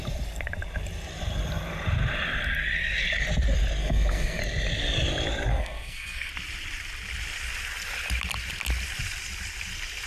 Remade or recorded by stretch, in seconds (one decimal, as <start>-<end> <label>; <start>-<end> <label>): 0.0-3.8 recorded; 3.8-4.4 remade; 4.4-5.5 recorded; 5.5-6.3 remade; 6.3-10.1 recorded